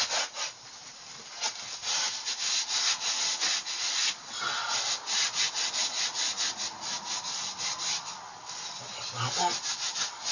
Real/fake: real